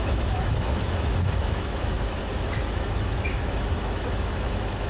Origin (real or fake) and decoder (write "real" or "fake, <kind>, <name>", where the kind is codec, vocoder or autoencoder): fake, autoencoder, DAC-VAE